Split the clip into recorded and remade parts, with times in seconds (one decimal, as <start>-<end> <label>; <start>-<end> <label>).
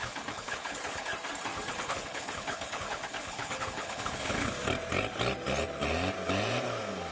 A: 0.0-1.1 remade; 1.1-1.7 recorded; 1.7-4.6 remade; 4.6-7.1 recorded